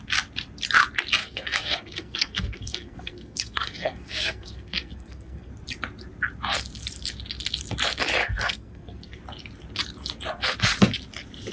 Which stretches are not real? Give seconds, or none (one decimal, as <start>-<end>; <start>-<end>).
1.2-5.5; 8.2-9.2